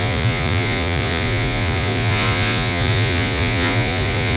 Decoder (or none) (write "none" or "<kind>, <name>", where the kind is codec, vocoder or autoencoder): vocoder, Vocos